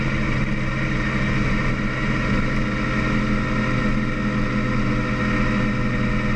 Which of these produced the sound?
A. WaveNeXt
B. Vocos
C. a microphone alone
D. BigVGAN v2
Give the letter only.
C